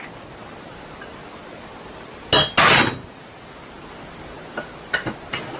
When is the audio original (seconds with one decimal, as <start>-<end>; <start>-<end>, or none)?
0.0-5.6